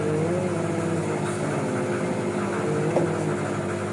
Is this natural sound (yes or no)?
yes